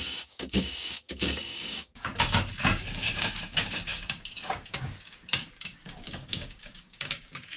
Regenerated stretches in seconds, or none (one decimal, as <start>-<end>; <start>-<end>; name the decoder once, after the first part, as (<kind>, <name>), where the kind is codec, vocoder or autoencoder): 0.0-2.1 (codec, DAC); 2.6-7.6